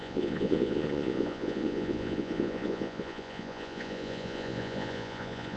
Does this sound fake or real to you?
fake